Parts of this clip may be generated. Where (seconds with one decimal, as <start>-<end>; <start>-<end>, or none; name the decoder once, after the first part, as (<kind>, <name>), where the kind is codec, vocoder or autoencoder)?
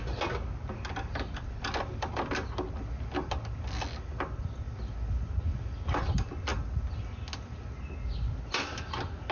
none